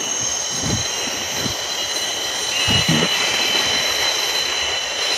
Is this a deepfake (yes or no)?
no